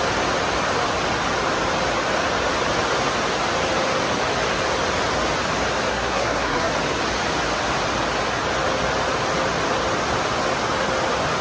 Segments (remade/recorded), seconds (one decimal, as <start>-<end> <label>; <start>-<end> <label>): 0.0-5.9 recorded; 5.9-6.7 remade; 6.7-11.4 recorded